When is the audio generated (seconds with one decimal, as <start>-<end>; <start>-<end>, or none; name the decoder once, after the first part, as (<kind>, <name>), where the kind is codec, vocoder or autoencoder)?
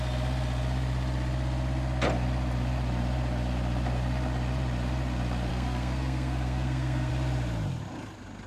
5.5-7.1 (codec, SNAC)